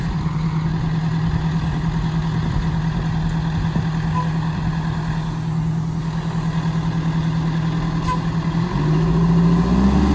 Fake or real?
real